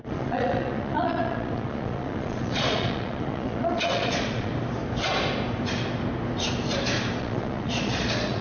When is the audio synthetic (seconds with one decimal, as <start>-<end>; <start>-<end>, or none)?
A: 0.0-4.5; 7.2-8.4

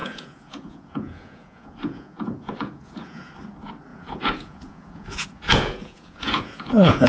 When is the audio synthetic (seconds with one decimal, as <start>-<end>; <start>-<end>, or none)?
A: 0.0-3.3; 3.9-7.1

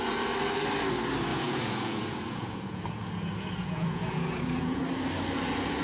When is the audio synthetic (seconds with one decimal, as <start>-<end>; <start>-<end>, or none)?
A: 1.3-4.8

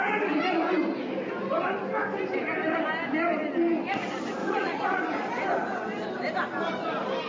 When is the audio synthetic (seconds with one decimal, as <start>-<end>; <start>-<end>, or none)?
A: 4.4-5.0

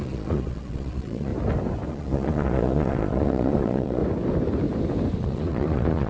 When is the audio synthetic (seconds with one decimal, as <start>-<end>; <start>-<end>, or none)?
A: 0.0-1.3; 1.9-4.0; 5.2-6.1

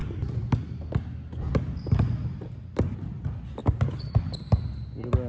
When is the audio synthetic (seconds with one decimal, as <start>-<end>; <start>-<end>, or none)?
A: none

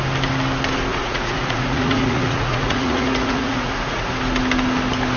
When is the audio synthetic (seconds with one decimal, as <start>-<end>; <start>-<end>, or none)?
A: 0.9-4.0